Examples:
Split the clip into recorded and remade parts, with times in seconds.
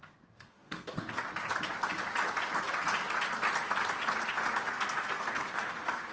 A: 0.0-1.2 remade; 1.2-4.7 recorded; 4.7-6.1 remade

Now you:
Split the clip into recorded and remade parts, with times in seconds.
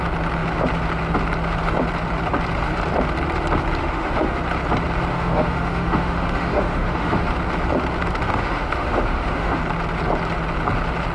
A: 0.0-3.8 recorded; 3.8-4.4 remade; 4.4-5.1 recorded; 5.1-7.3 remade; 7.3-8.3 recorded; 8.3-9.6 remade; 9.6-11.1 recorded